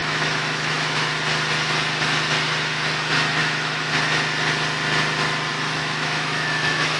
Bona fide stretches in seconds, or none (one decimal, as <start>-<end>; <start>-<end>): 1.1-3.4; 3.9-5.5